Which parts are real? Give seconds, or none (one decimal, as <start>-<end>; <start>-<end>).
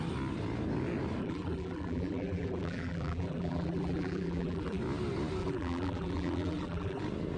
0.0-1.2; 4.8-5.4; 7.0-7.4